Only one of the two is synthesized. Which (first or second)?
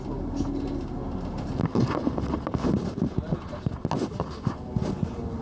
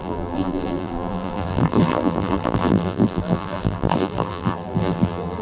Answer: second